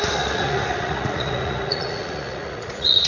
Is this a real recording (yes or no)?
no